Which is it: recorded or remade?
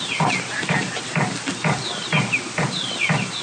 recorded